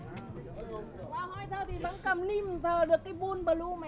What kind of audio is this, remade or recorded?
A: recorded